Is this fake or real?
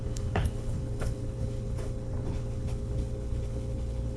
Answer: fake